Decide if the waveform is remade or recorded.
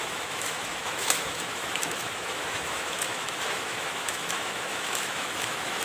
remade